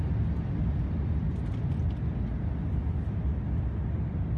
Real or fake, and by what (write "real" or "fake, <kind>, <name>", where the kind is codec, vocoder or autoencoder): real